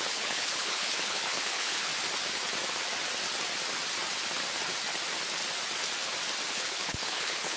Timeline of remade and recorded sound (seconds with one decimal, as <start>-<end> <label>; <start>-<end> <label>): 0.0-1.9 remade; 1.9-6.5 recorded; 6.5-7.6 remade